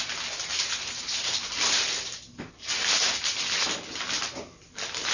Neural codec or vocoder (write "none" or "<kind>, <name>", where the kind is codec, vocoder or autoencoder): none